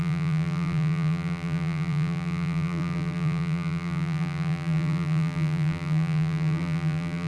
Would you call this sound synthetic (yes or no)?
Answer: yes